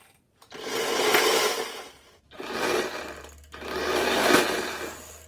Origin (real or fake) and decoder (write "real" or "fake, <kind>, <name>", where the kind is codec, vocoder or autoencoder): real